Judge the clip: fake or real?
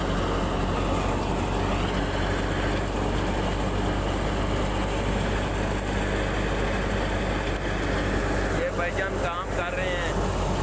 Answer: real